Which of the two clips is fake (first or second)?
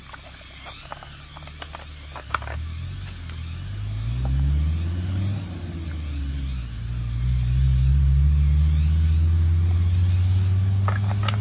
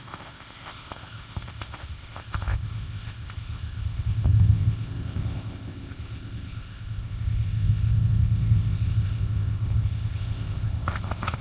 second